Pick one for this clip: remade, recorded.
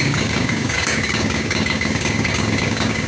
remade